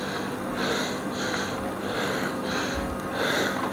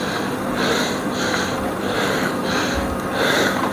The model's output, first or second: second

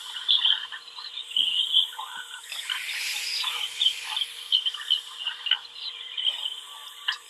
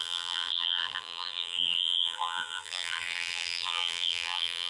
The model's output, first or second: second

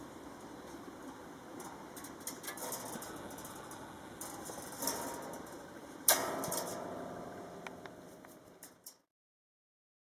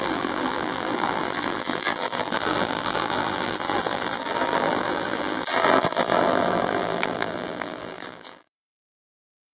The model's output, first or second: second